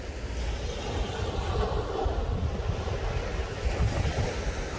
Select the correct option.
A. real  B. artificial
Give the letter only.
A